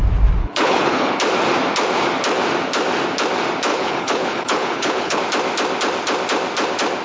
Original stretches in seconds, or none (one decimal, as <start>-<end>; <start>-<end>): 0.0-0.4; 1.1-3.7; 5.2-7.0